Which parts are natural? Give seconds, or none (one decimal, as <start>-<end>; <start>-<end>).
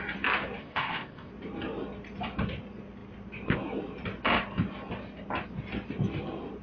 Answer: 0.0-0.6; 1.3-6.6